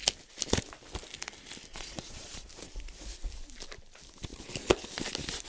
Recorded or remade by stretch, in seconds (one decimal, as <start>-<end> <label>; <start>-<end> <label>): 0.0-1.7 recorded; 1.7-2.5 remade; 2.5-5.5 recorded